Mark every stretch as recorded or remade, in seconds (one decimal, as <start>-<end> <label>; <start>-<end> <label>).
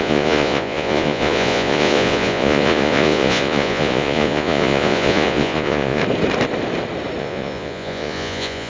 0.0-6.0 remade; 6.0-7.2 recorded; 7.2-8.7 remade